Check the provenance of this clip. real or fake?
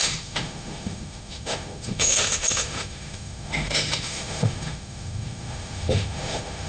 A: fake